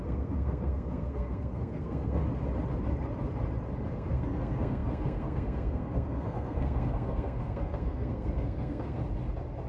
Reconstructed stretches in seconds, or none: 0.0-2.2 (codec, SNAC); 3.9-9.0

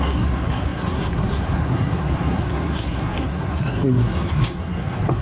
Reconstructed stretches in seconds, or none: 0.0-5.2 (codec, SNAC)

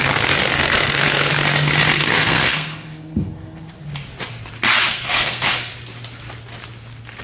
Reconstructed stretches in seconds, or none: 0.5-1.3 (codec, SNAC); 1.9-3.7; 4.9-5.7